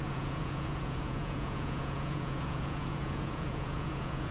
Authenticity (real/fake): fake